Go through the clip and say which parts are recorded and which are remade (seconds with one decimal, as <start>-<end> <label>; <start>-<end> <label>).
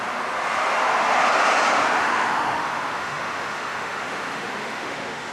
0.0-2.0 recorded; 2.0-5.3 remade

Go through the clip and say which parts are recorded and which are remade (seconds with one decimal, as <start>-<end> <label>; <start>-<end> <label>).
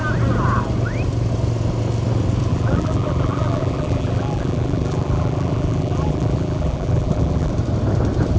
0.0-2.5 recorded; 2.5-7.5 remade; 7.5-8.4 recorded